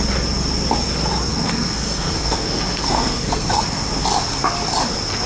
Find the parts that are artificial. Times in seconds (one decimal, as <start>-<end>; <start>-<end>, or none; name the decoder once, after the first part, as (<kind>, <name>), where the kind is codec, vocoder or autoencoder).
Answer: 1.3-3.9 (codec, SNAC)